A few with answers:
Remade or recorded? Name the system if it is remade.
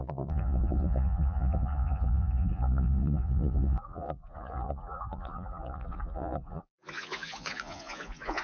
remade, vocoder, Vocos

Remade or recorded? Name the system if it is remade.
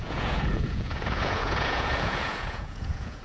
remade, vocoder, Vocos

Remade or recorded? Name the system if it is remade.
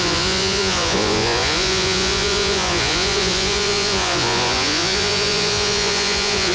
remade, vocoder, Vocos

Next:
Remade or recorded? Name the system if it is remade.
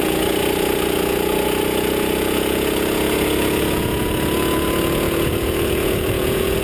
remade, vocoder, Vocos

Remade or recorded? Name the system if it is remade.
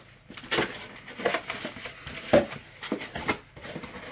recorded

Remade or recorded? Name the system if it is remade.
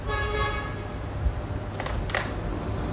recorded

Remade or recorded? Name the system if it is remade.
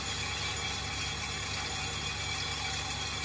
recorded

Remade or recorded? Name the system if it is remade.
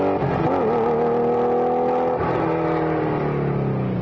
recorded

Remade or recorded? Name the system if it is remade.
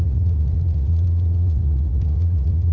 remade, vocoder, Vocos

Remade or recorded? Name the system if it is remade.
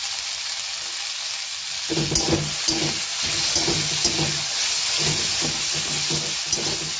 recorded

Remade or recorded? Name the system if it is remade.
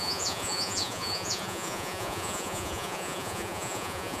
remade, vocoder, Vocos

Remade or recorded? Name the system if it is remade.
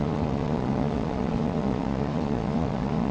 remade, vocoder, Vocos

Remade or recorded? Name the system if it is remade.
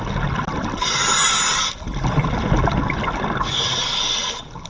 recorded